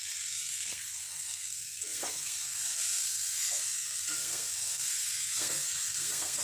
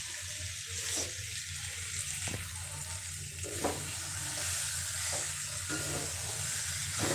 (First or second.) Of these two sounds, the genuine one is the second